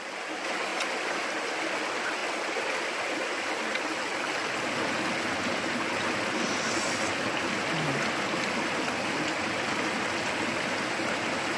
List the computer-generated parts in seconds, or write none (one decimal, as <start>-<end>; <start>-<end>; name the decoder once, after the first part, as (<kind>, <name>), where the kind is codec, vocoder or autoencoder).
none

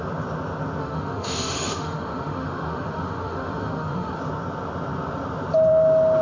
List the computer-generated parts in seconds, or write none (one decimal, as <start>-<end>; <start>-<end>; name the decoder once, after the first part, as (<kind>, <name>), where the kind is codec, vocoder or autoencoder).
0.8-4.2 (autoencoder, DAC-VAE)

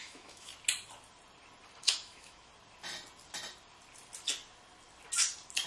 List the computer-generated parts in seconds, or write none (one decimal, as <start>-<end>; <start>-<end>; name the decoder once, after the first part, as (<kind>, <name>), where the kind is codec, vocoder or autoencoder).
0.0-0.5 (autoencoder, DAC-VAE); 1.8-2.5

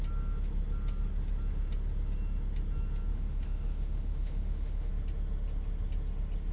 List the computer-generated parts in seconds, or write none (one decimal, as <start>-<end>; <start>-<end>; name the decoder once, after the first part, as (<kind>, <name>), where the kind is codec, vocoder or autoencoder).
3.1-4.9 (autoencoder, DAC-VAE)

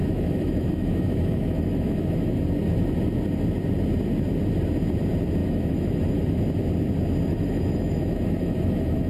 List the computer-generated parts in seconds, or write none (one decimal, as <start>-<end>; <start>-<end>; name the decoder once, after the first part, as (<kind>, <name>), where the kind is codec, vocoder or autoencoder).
0.0-2.4 (autoencoder, DAC-VAE); 5.4-6.4; 7.3-9.1

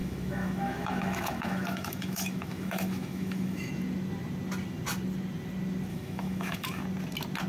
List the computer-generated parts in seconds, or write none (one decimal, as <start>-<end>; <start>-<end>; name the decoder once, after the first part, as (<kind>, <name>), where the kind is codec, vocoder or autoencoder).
0.0-3.7 (autoencoder, DAC-VAE); 5.9-6.8

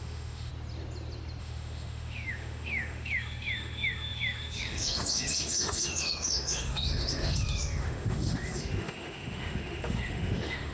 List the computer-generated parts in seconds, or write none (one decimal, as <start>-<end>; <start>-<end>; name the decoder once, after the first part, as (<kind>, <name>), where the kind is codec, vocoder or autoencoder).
0.0-0.5 (autoencoder, DAC-VAE); 1.4-10.7

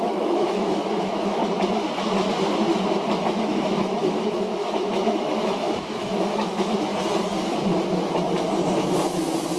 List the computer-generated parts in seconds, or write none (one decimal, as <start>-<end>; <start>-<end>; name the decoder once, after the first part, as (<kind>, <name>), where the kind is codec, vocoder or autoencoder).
0.0-1.4 (autoencoder, DAC-VAE); 3.2-6.9